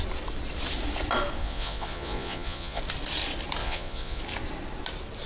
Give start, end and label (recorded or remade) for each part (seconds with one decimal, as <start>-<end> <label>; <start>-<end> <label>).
0.0-1.4 recorded; 1.4-2.8 remade; 2.8-3.6 recorded; 3.6-4.2 remade; 4.2-5.3 recorded